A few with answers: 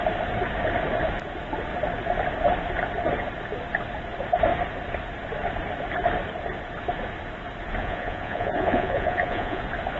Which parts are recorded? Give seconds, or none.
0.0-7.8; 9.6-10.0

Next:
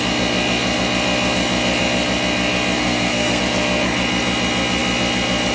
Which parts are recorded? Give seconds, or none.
0.0-2.8; 3.4-5.5

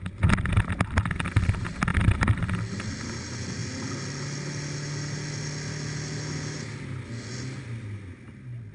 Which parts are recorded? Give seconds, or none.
0.0-8.7

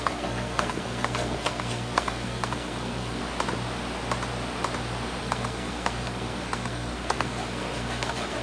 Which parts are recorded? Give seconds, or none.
3.2-5.2

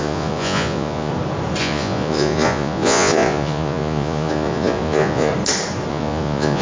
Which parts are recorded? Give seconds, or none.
1.1-1.6; 5.3-5.9

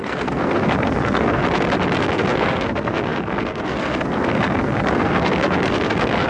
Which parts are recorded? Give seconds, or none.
1.4-2.0

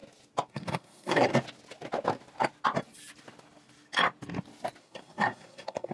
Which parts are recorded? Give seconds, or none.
0.0-0.5; 1.3-4.8

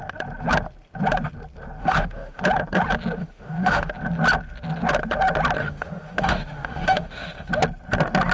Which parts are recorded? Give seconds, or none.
0.0-1.8; 2.4-3.2; 3.9-5.6; 7.5-8.3